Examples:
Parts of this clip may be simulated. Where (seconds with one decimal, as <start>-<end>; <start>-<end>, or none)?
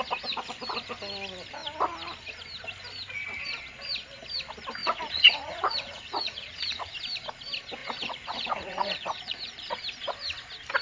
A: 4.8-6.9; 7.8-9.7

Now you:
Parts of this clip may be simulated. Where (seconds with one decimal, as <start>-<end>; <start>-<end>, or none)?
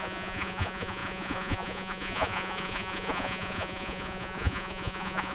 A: 0.0-5.3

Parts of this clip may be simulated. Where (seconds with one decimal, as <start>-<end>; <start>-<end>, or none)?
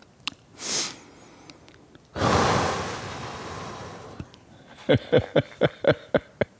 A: none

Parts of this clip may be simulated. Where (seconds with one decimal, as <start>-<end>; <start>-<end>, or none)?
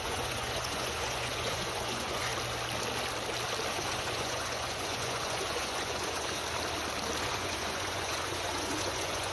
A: 0.0-2.3; 3.7-6.4; 7.2-9.3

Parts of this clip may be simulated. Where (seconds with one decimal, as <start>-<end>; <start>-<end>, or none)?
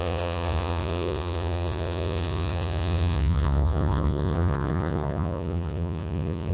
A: 0.0-6.5